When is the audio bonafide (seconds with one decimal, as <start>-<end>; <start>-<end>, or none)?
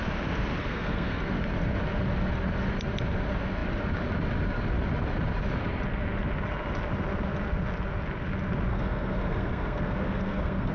0.0-0.6; 1.2-8.7